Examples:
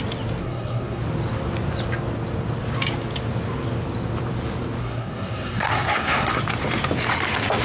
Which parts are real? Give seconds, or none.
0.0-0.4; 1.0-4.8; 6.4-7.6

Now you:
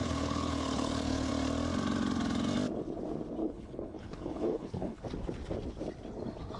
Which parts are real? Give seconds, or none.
1.3-3.4; 5.0-6.6

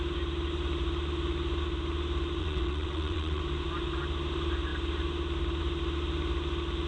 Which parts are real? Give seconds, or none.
0.0-2.4; 3.4-6.9

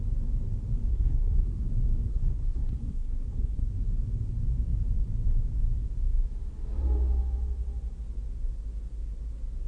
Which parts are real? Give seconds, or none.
0.0-0.9; 1.6-2.1; 3.7-9.7

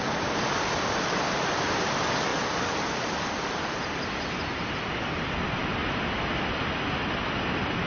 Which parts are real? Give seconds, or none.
0.0-7.9

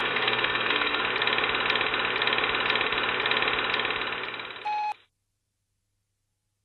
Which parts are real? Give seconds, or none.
1.0-6.6

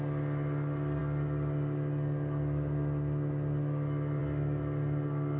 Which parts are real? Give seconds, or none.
0.0-5.4

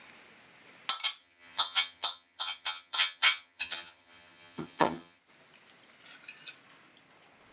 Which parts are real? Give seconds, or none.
0.0-1.2; 5.2-7.5